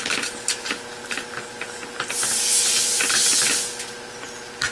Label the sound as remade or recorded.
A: recorded